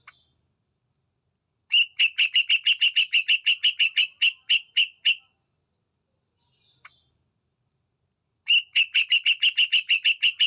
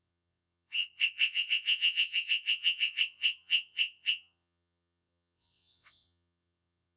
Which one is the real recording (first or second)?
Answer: first